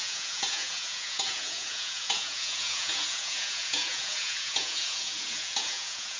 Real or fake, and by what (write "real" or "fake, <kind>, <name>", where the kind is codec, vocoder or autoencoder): fake, vocoder, Vocos